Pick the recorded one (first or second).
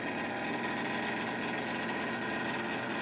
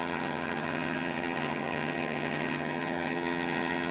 first